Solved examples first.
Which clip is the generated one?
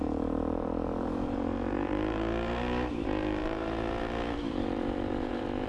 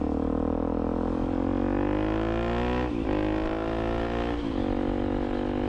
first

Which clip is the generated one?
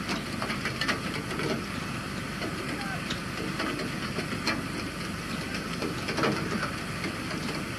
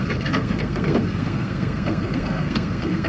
second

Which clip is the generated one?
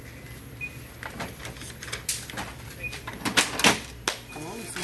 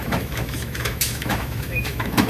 second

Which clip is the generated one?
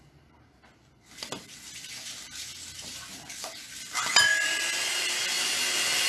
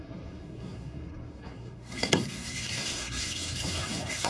second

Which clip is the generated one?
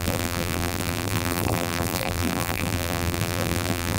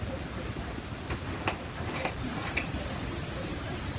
first